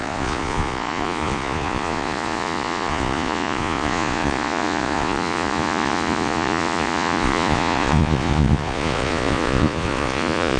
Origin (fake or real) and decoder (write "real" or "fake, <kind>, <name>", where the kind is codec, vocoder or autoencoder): fake, vocoder, Vocos